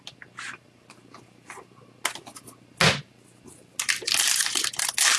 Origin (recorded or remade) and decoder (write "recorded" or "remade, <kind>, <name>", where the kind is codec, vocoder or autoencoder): recorded